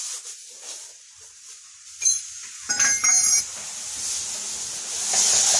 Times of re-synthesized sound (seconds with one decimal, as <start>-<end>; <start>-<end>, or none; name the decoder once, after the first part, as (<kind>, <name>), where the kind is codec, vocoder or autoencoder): none

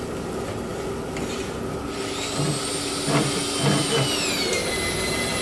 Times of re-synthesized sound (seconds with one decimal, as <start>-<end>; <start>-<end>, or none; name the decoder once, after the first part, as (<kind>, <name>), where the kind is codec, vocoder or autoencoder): none

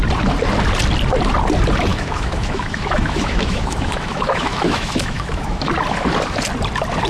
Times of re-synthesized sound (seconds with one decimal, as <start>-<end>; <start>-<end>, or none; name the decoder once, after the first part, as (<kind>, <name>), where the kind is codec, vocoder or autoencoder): 1.9-5.7 (autoencoder, DAC-VAE)

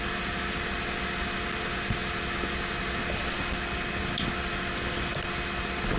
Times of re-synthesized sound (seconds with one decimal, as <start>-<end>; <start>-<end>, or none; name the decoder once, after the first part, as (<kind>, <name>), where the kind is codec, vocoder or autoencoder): none

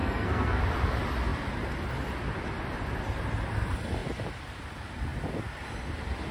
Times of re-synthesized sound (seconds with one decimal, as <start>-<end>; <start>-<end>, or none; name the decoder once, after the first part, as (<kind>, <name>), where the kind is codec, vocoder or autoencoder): 0.0-0.6 (codec, SNAC)

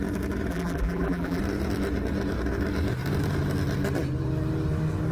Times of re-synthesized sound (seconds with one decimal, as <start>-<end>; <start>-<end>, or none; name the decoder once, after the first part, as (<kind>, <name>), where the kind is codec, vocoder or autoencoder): 0.5-1.4 (vocoder, BigVGAN v2)

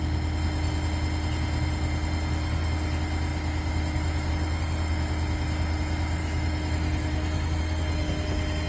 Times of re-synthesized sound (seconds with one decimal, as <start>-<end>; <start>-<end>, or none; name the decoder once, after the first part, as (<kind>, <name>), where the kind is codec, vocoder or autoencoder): 3.3-4.3 (autoencoder, DAC-VAE); 6.2-7.6